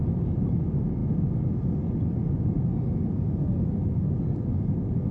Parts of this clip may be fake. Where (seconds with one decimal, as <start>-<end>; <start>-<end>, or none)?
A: none